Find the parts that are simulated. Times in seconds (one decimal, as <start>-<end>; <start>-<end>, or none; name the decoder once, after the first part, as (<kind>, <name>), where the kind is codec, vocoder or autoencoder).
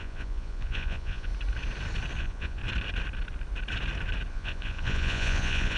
0.0-1.3 (vocoder, Vocos); 2.2-2.6; 4.3-5.8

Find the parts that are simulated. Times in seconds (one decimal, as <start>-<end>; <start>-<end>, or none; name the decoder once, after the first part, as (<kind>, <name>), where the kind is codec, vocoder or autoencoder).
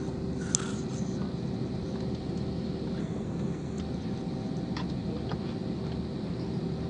3.0-3.8 (codec, SNAC)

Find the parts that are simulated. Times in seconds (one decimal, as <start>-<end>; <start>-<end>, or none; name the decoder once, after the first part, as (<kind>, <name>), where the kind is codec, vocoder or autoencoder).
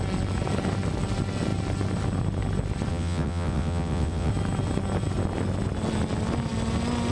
2.9-4.3 (vocoder, WaveNeXt)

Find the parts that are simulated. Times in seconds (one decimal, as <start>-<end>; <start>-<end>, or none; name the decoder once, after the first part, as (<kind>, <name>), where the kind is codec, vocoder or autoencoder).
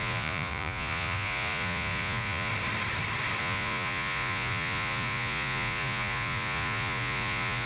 0.0-2.5 (vocoder, Vocos); 3.4-7.7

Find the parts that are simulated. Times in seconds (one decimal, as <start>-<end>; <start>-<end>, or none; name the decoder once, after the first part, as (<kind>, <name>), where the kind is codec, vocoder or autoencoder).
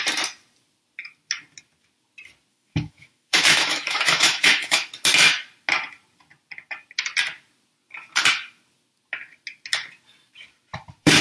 2.5-4.9 (autoencoder, DAC-VAE)